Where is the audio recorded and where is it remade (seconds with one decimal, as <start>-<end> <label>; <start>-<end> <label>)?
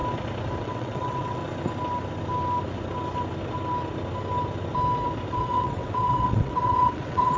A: 0.0-0.6 recorded; 0.6-1.4 remade; 1.4-5.3 recorded; 5.3-7.4 remade